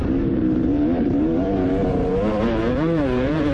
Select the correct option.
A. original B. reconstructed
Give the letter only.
B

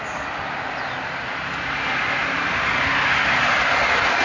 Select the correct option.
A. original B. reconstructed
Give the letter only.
A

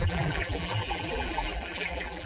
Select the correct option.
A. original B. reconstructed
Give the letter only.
B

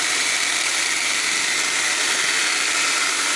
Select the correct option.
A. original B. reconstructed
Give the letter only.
B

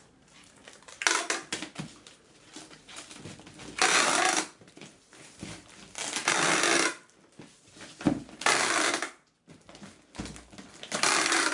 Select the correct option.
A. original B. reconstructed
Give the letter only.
A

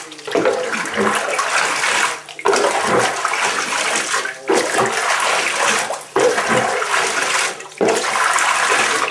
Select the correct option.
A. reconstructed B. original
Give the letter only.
B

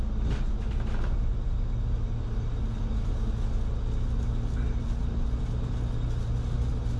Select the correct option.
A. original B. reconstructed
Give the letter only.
A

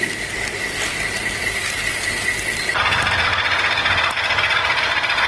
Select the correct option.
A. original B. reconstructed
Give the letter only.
A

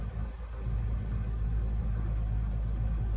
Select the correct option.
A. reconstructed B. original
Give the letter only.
B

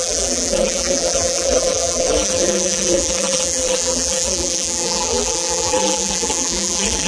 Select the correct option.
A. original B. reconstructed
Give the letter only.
B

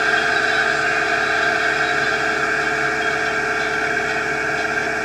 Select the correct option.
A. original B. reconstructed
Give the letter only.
A